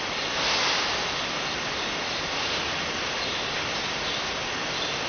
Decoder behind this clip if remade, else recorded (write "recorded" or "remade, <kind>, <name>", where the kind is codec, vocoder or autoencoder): recorded